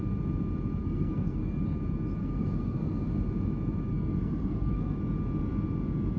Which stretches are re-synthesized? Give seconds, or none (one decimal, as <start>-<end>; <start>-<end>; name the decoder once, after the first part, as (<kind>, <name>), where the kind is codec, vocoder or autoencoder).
0.8-1.6 (codec, SNAC); 2.2-3.1; 3.9-5.0

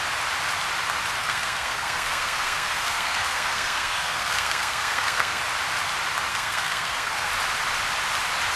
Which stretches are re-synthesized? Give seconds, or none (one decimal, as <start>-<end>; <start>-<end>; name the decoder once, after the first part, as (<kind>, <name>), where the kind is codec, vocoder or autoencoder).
1.2-5.4 (codec, SNAC); 6.3-7.3

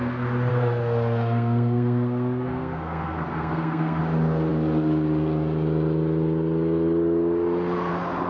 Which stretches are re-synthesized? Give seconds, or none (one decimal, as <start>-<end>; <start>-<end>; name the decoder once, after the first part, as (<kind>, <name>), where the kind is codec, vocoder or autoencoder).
0.5-4.0 (codec, SNAC)

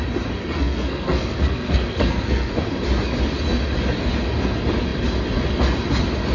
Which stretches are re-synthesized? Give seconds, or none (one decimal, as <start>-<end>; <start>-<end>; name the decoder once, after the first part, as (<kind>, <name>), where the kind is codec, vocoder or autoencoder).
0.4-2.5 (codec, SNAC)